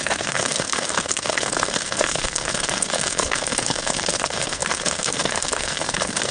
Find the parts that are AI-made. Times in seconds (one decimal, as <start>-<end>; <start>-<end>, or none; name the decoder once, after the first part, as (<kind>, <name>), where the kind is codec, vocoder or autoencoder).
0.0-6.3 (codec, SNAC)